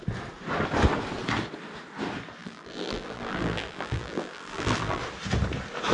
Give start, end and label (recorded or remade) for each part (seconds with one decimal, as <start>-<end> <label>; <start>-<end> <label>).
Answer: 0.0-2.4 recorded; 2.4-5.0 remade; 5.0-5.9 recorded